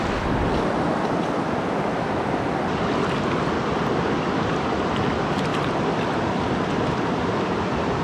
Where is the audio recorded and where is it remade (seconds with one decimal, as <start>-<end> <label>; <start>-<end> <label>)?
0.0-8.0 recorded